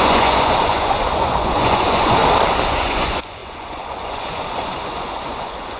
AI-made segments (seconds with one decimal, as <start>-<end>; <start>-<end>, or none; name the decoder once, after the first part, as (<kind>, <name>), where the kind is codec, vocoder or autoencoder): 0.0-2.2 (vocoder, Vocos); 2.7-5.8